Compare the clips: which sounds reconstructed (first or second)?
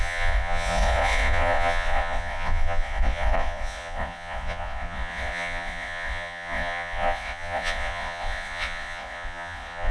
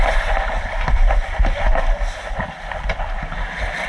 first